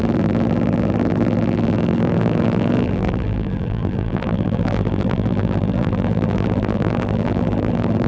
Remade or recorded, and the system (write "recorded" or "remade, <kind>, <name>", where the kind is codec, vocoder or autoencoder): remade, vocoder, BigVGAN v2